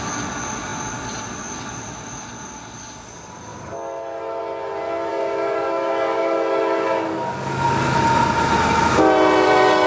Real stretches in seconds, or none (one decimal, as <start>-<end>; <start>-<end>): 0.0-5.1; 8.0-9.9